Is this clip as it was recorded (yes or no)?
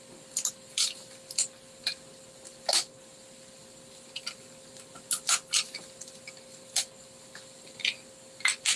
yes